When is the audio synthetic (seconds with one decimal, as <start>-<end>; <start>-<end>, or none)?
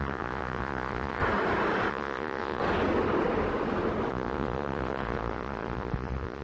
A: 0.0-1.2; 1.9-2.6; 4.1-6.4